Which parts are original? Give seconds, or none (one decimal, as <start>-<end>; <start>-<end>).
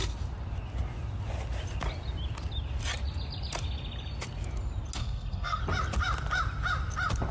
0.0-5.0; 5.6-7.3